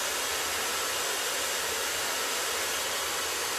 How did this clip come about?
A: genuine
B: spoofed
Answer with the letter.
A